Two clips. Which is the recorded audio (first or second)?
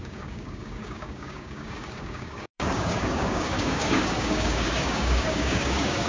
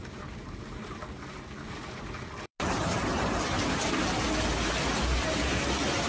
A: second